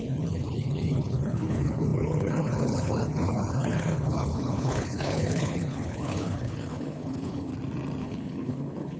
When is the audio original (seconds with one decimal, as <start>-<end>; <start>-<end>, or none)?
7.5-8.0